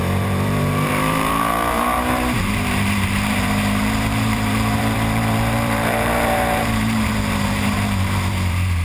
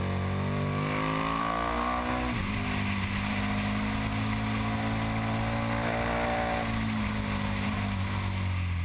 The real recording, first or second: second